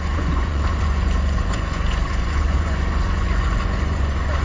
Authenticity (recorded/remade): remade